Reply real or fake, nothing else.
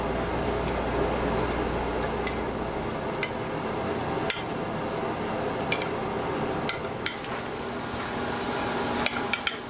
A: real